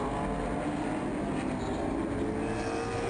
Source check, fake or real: real